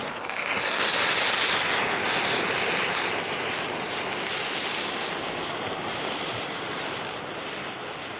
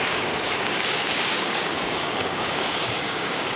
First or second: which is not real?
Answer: second